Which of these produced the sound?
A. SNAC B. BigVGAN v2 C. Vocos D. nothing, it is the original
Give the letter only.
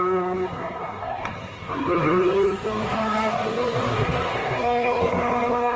A